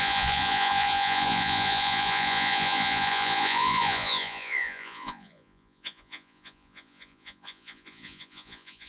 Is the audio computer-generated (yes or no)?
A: yes